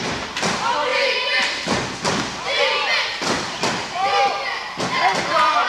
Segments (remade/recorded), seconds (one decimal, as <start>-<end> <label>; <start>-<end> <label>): 0.0-5.7 recorded

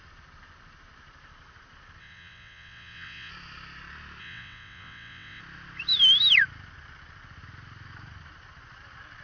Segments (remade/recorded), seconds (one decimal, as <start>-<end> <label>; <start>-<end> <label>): 0.0-2.0 recorded; 2.0-3.3 remade; 3.3-4.2 recorded; 4.2-5.4 remade; 5.4-9.2 recorded

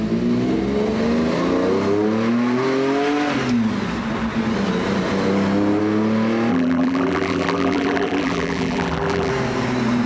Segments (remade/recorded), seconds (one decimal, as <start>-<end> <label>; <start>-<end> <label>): 0.0-6.5 recorded; 6.5-9.3 remade; 9.3-10.1 recorded

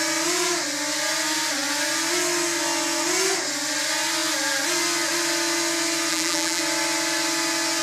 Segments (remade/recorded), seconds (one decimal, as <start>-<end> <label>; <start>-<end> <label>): 0.0-6.1 recorded; 6.1-6.6 remade; 6.6-7.8 recorded

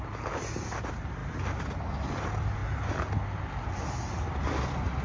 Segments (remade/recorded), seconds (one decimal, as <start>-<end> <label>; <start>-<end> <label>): 0.0-5.0 recorded

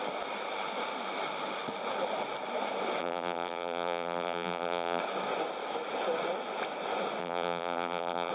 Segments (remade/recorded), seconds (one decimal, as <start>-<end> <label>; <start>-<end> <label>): 0.0-3.0 recorded; 3.0-5.0 remade; 5.0-7.2 recorded; 7.2-8.3 remade

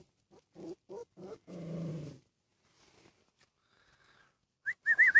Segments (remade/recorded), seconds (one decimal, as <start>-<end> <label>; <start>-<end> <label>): 0.0-1.0 recorded; 1.0-1.9 remade; 1.9-5.2 recorded